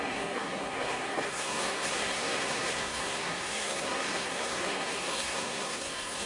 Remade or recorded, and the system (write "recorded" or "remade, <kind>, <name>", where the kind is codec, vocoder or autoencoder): remade, codec, SNAC